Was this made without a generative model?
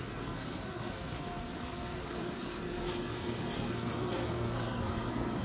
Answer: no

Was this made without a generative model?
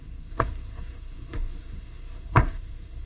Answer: no